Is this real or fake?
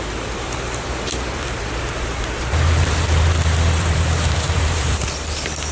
fake